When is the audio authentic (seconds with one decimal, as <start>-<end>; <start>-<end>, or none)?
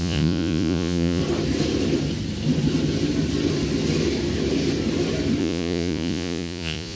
1.2-5.4